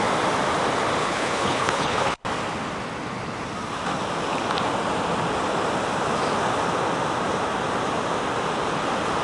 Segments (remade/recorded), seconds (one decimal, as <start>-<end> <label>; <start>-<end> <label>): 0.0-1.0 recorded; 1.0-2.2 remade; 2.2-9.2 recorded